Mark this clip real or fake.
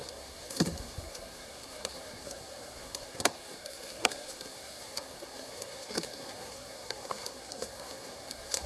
fake